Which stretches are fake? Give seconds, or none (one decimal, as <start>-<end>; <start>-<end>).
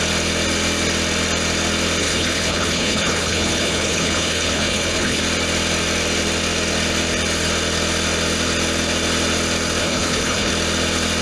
2.0-5.2; 9.8-10.5